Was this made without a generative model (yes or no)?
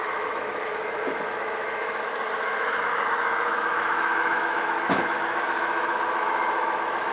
no